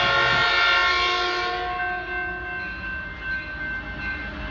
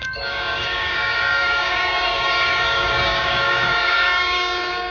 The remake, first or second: second